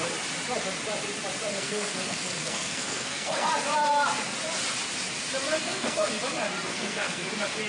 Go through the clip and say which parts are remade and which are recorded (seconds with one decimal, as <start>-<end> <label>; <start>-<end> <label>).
0.0-1.5 recorded; 1.5-3.5 remade; 3.5-5.6 recorded; 5.6-6.1 remade; 6.1-6.7 recorded; 6.7-7.3 remade; 7.3-7.7 recorded